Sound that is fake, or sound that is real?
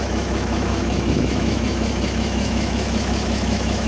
fake